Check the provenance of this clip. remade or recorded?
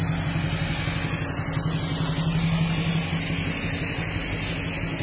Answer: recorded